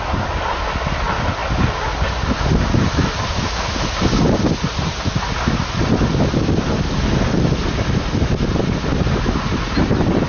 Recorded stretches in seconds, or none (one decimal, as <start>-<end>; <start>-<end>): 0.0-10.3